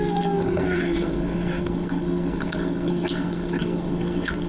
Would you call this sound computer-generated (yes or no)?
yes